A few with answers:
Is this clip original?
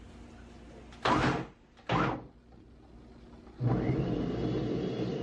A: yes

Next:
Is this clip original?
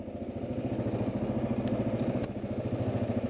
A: yes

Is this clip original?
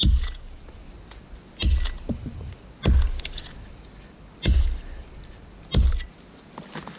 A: yes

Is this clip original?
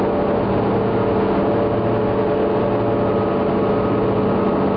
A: yes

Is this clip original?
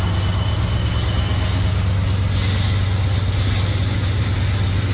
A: yes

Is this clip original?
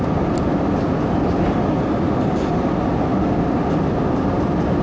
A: yes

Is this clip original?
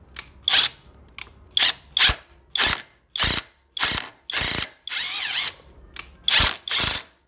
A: yes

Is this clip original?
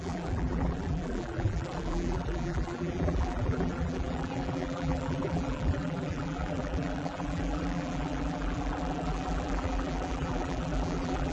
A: no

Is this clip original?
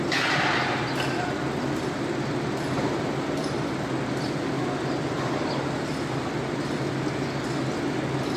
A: yes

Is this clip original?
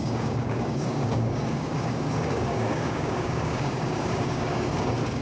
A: no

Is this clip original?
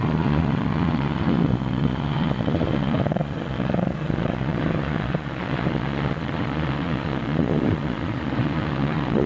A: no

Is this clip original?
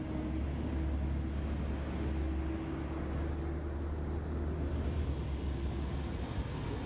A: yes